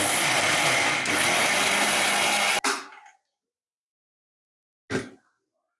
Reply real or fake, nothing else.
real